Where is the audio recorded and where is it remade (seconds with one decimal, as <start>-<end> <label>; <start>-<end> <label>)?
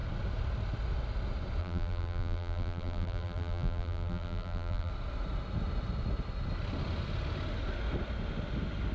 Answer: 0.0-1.6 recorded; 1.6-4.9 remade; 4.9-8.9 recorded